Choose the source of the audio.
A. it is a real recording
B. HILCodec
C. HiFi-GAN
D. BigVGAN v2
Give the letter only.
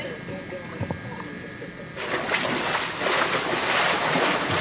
A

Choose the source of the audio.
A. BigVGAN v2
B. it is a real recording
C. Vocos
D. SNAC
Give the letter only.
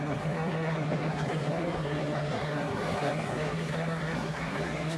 D